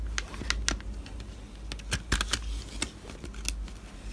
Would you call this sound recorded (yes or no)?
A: yes